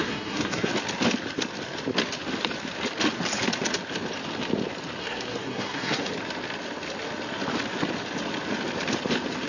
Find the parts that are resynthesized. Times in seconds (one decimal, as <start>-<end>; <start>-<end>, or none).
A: 0.0-0.7; 5.0-6.1

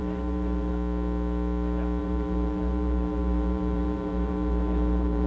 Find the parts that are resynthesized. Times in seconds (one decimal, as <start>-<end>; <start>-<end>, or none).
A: 0.0-0.7; 2.0-5.3

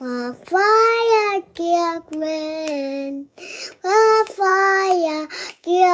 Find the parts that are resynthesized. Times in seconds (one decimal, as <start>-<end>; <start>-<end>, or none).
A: 0.0-0.4; 1.6-4.5; 5.5-5.9

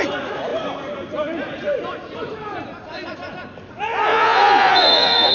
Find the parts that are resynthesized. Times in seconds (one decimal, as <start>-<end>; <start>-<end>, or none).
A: 4.1-5.3

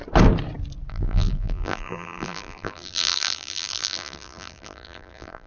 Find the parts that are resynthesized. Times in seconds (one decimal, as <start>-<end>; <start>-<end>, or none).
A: 0.9-5.5